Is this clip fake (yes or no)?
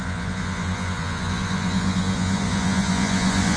yes